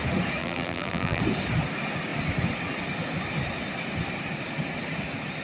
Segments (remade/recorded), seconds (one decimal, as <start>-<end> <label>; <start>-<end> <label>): 0.0-0.4 recorded; 0.4-1.2 remade; 1.2-5.4 recorded